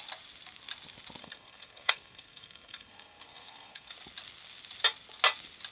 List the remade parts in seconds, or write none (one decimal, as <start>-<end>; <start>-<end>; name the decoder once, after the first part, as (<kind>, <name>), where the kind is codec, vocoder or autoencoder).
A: 1.2-3.9 (codec, SNAC)

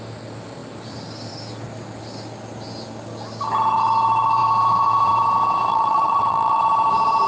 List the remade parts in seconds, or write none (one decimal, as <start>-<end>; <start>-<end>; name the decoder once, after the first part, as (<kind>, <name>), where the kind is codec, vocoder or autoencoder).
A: 5.7-6.6 (vocoder, WaveNeXt)

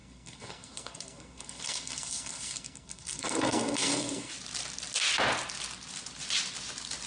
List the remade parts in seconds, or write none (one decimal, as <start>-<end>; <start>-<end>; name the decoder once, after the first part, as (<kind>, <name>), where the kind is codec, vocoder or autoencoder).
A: 0.0-4.3 (codec, SNAC)

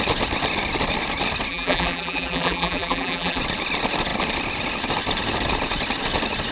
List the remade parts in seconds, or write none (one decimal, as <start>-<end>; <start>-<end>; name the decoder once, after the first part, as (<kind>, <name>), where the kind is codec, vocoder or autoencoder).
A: 1.5-3.4 (vocoder, BigVGAN v2)

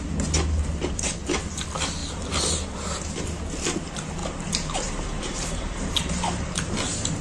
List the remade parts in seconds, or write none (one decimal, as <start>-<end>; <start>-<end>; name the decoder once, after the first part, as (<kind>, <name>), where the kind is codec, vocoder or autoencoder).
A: 4.2-6.7 (vocoder, BigVGAN v2)

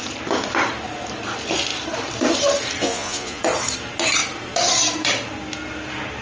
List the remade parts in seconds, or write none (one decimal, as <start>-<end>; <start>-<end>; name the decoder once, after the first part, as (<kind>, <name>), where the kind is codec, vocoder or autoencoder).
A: 2.8-3.4 (vocoder, Vocos)

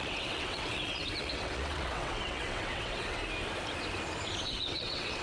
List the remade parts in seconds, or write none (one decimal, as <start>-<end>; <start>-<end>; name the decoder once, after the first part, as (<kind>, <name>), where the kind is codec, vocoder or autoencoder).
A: 0.0-3.2 (vocoder, WaveNeXt); 4.4-5.2

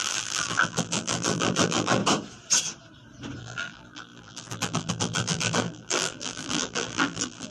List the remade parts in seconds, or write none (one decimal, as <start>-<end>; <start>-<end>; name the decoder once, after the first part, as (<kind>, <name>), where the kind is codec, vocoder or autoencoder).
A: 0.0-2.0 (vocoder, BigVGAN v2); 3.4-7.5